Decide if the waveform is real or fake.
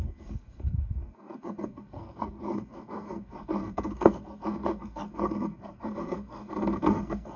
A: fake